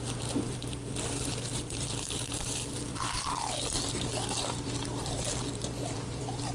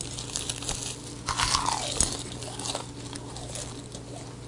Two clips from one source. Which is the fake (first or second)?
first